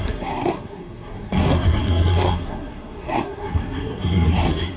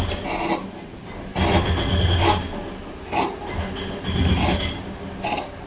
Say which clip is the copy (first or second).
first